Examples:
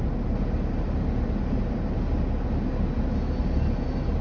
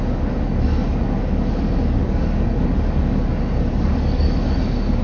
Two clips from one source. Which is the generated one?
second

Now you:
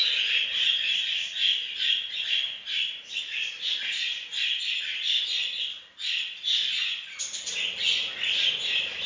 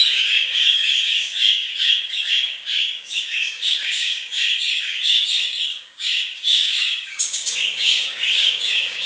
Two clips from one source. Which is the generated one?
second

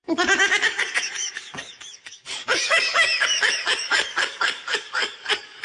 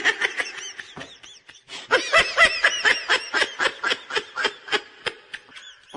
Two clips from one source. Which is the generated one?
first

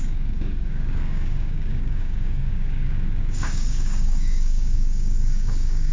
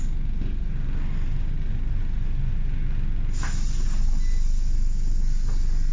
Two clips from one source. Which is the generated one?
first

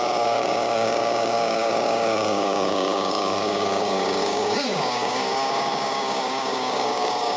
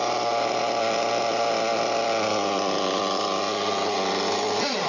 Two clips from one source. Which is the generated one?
first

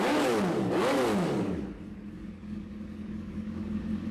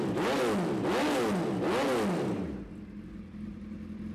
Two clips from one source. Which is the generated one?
first